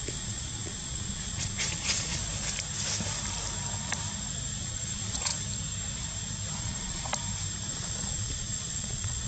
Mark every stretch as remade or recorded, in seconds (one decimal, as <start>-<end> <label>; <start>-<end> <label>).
0.0-2.2 remade; 2.2-4.6 recorded; 4.6-5.3 remade; 5.3-6.6 recorded; 6.6-7.1 remade; 7.1-7.7 recorded; 7.7-9.3 remade